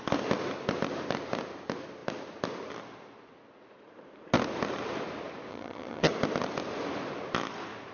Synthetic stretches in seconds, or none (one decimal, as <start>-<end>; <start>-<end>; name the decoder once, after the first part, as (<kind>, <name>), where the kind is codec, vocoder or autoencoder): 5.5-6.1 (vocoder, HiFi-GAN)